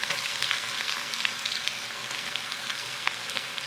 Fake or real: fake